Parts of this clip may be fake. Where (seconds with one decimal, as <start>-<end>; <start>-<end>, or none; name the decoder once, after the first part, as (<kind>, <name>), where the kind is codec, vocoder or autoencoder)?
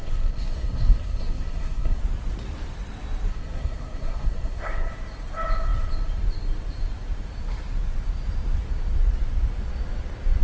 0.0-2.0 (codec, SNAC); 3.3-4.9